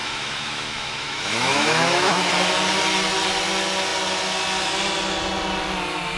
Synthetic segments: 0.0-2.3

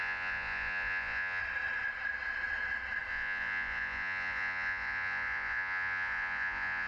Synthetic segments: 0.0-1.4; 3.1-6.9

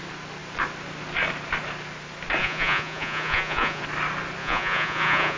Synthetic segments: 2.4-3.8; 4.4-5.4

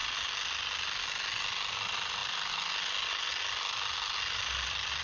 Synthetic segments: none

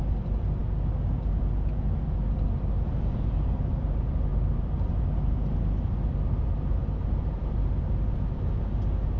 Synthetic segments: 4.3-5.0

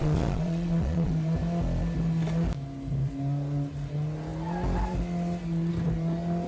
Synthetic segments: 0.0-1.1